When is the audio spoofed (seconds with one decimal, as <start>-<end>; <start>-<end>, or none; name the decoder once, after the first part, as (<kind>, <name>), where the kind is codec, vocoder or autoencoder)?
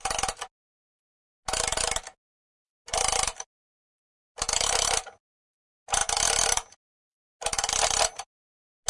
none